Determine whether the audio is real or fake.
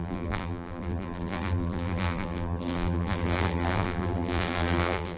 fake